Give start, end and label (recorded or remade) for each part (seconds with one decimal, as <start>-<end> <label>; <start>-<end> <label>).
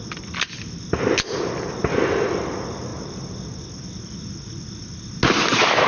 0.0-5.9 recorded